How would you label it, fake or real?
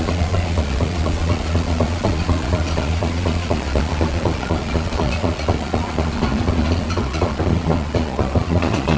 fake